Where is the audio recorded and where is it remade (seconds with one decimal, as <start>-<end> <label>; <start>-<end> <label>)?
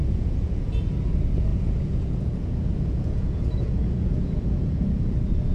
0.0-0.9 remade; 0.9-1.5 recorded; 1.5-4.8 remade; 4.8-5.5 recorded